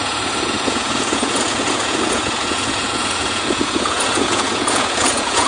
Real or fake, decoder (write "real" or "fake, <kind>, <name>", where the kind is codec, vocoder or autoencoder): fake, vocoder, Vocos